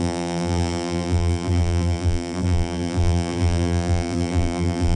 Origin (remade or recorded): remade